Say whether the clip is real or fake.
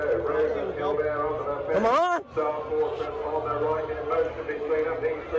real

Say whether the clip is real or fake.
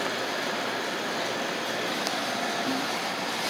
real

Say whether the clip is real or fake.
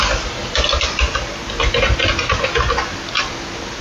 real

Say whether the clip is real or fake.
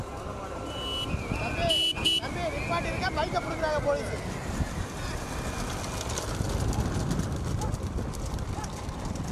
real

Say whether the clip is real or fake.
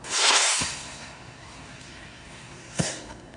fake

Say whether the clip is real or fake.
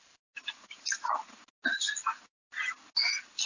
real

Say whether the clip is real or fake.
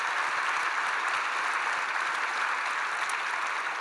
real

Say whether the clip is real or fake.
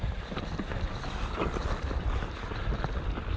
real